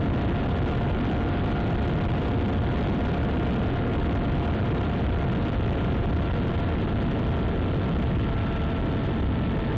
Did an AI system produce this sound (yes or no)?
no